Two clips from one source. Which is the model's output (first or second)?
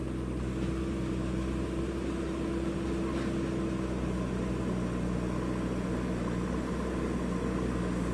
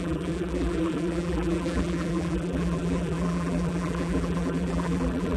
second